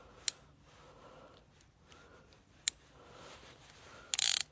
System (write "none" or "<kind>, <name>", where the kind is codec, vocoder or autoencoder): none